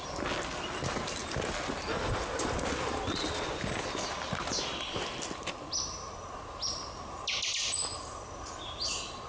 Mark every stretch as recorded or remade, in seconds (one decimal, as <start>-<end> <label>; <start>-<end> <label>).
0.0-9.3 recorded